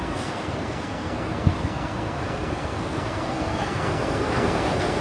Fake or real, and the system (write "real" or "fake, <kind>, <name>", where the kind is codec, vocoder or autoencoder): fake, codec, SNAC